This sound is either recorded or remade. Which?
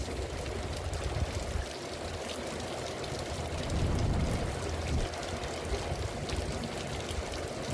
recorded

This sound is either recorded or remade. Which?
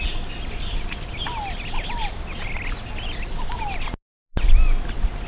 recorded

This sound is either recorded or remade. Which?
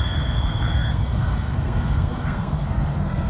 remade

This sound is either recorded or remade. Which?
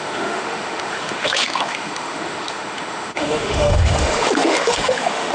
remade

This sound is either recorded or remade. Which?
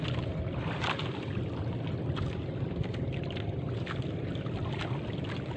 recorded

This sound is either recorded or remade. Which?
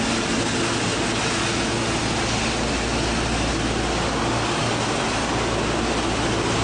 recorded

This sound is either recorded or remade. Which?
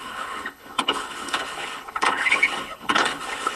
remade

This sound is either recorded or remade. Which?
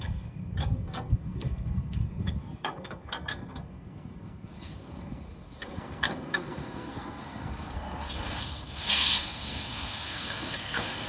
remade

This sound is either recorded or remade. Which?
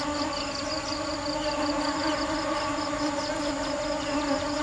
recorded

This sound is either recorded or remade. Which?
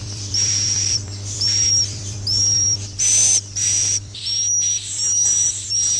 remade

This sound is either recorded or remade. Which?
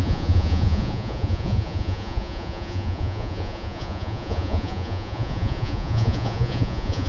remade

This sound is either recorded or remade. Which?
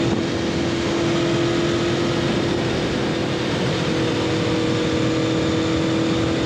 recorded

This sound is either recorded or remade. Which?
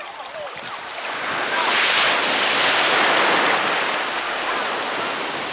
recorded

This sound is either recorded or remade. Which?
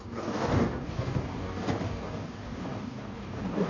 remade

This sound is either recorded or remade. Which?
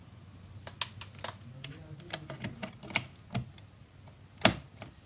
recorded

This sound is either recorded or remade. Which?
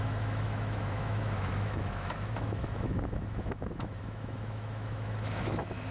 remade